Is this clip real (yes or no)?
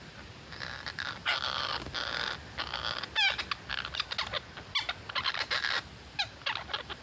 yes